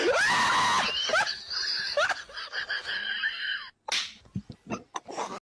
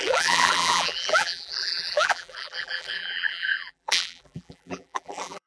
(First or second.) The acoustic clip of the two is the first